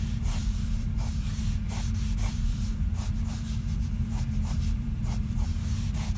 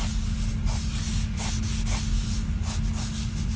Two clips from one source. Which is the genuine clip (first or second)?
second